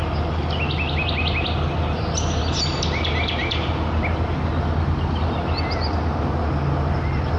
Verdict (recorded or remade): recorded